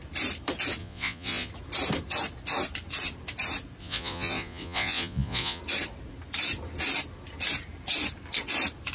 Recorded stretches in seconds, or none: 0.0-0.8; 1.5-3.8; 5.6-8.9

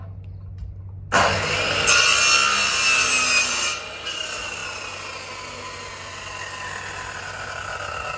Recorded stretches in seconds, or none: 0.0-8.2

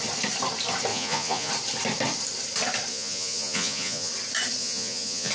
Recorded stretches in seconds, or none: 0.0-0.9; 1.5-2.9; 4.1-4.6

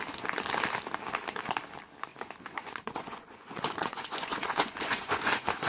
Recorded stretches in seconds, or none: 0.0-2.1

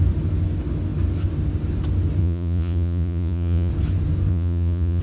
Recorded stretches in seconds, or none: 0.0-2.2; 3.7-4.3